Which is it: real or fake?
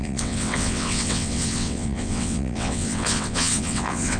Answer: fake